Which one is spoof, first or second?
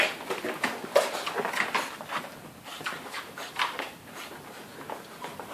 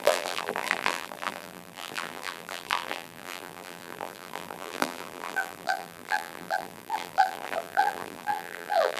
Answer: second